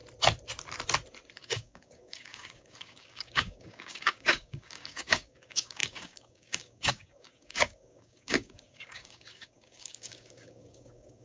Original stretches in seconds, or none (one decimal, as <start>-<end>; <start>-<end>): 0.0-1.4